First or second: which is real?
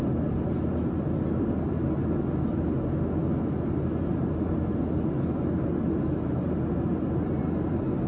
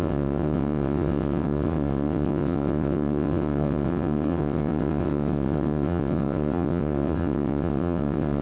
first